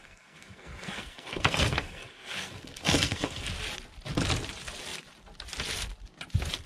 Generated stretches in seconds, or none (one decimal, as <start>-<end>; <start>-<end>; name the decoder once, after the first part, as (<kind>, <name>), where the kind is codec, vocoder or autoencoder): 0.0-3.5 (codec, SNAC)